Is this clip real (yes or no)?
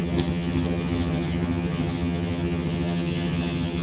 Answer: no